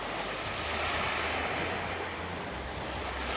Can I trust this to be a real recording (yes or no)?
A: yes